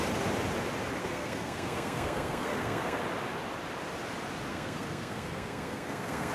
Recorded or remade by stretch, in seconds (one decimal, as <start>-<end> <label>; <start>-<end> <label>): 0.0-1.0 recorded; 1.0-3.0 remade; 3.0-4.5 recorded; 4.5-6.3 remade

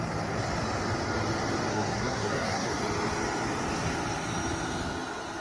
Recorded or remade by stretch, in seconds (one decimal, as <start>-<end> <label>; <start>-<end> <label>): 0.0-1.7 recorded; 1.7-2.7 remade; 2.7-5.4 recorded

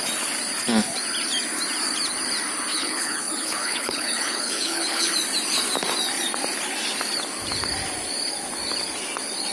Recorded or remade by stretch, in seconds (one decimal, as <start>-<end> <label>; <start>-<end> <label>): 0.0-2.7 recorded; 2.7-5.1 remade; 5.1-9.5 recorded

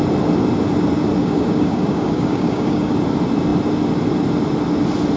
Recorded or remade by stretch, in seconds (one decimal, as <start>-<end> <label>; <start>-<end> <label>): 0.0-1.2 recorded; 1.2-2.9 remade; 2.9-5.2 recorded

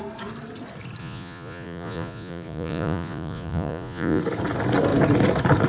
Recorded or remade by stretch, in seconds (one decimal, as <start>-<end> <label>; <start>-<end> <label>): 0.0-1.0 recorded; 1.0-4.2 remade; 4.2-5.7 recorded